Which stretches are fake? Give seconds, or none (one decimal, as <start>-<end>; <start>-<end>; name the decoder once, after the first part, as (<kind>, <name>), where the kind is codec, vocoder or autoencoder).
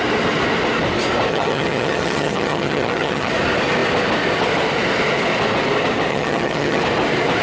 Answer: 1.3-3.3 (vocoder, HiFi-GAN); 6.1-6.8